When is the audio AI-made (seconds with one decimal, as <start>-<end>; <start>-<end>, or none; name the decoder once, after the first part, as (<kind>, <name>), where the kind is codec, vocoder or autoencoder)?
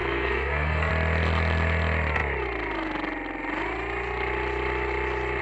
0.0-0.9 (codec, SNAC)